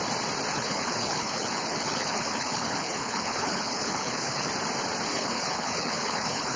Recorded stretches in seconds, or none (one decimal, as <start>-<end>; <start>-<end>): 0.0-0.5; 4.5-5.1